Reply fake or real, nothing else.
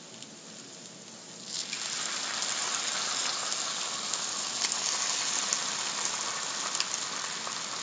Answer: real